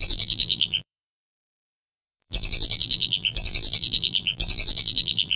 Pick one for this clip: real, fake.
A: fake